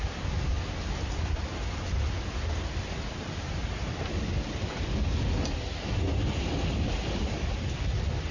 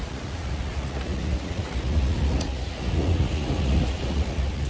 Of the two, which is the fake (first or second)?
second